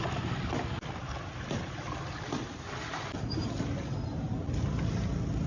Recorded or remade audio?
recorded